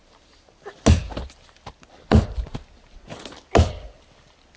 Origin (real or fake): real